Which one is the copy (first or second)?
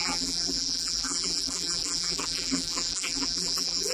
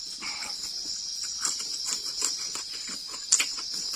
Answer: first